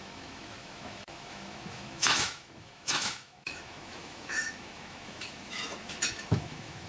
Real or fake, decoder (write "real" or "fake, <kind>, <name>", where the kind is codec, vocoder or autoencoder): fake, autoencoder, DAC-VAE